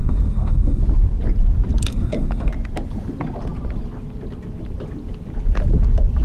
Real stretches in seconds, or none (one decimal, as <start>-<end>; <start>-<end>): 0.8-1.9; 2.5-6.2